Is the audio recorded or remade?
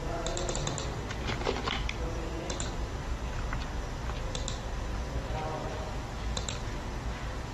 recorded